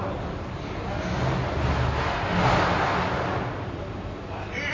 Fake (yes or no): no